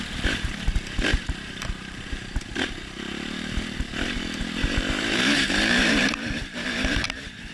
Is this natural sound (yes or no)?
no